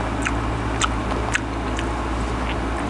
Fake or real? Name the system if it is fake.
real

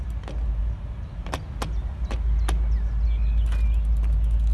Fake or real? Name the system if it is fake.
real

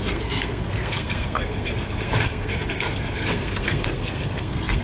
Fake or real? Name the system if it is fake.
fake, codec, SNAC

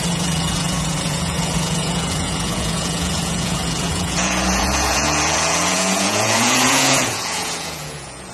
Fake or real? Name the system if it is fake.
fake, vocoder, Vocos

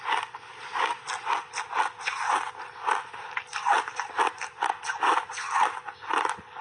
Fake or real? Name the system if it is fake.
real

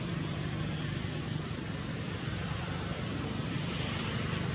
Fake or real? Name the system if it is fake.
real